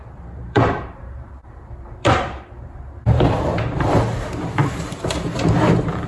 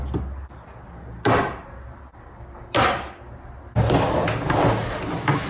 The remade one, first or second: first